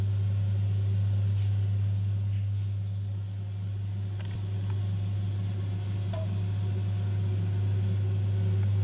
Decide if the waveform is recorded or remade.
recorded